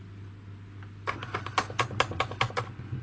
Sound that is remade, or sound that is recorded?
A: recorded